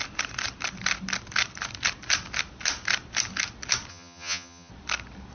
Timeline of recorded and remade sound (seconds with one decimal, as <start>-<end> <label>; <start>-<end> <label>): 0.0-3.9 recorded; 3.9-4.7 remade; 4.7-5.3 recorded